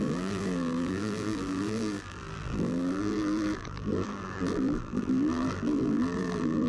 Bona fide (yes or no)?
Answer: no